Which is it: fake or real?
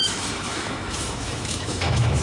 fake